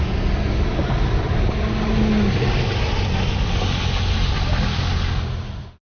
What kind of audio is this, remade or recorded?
recorded